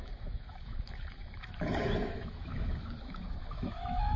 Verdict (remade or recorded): remade